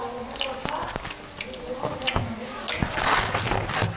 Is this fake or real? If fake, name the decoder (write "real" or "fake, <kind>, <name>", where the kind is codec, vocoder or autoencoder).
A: real